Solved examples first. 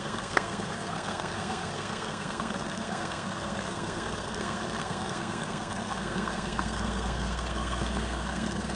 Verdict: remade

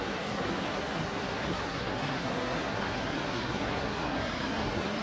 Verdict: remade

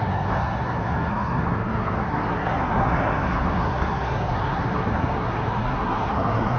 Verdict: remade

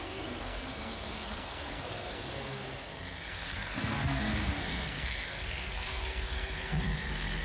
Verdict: remade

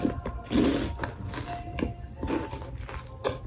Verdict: recorded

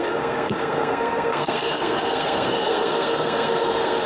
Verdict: remade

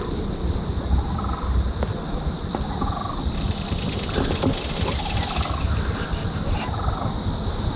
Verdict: recorded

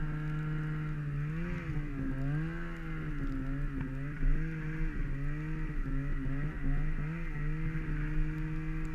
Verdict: recorded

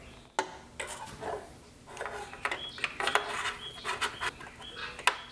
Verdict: recorded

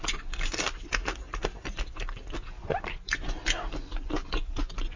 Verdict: recorded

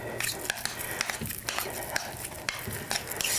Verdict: recorded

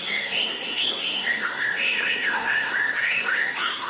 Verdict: remade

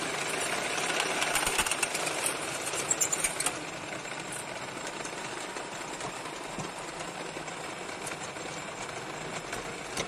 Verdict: recorded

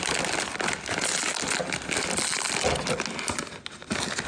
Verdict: recorded